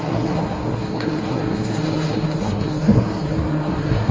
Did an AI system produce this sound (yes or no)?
yes